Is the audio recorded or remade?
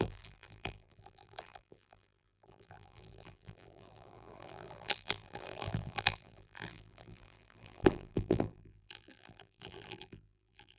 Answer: remade